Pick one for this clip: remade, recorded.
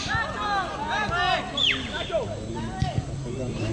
recorded